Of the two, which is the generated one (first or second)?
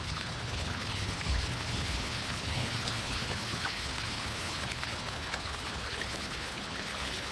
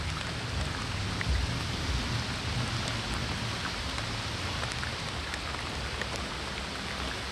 first